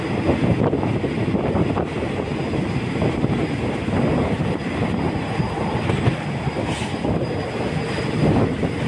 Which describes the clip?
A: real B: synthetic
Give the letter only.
A